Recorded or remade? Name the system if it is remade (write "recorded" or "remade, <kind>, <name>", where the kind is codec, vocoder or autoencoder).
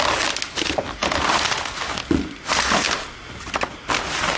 recorded